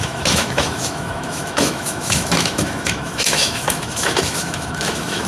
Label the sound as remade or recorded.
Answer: remade